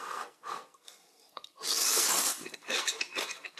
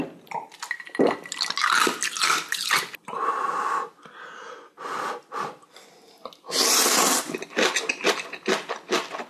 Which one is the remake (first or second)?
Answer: first